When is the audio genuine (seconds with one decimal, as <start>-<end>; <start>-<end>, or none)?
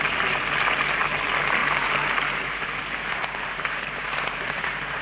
0.0-1.6; 4.6-5.0